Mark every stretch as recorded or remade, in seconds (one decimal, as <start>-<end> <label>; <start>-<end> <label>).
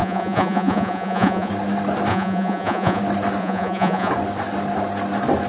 0.0-1.5 remade; 1.5-2.1 recorded; 2.1-3.0 remade; 3.0-3.4 recorded; 3.4-4.1 remade; 4.1-5.5 recorded